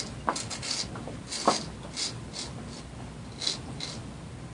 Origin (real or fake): real